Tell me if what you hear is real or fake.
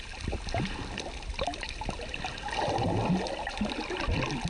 real